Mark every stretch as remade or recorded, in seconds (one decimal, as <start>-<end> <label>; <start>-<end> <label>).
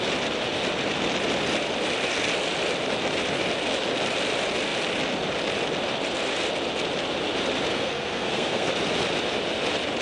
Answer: 0.0-7.7 recorded; 7.7-8.7 remade; 8.7-10.0 recorded